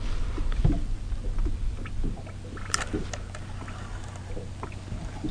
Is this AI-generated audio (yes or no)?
no